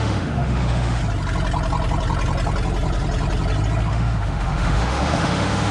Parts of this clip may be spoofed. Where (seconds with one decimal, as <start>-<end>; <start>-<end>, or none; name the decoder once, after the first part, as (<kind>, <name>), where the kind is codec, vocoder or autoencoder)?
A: 0.0-1.0 (autoencoder, DAC-VAE); 3.9-5.7